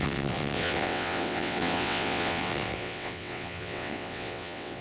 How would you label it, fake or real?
fake